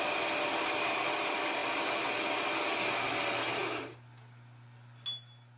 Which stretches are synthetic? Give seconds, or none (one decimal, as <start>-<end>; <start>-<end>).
none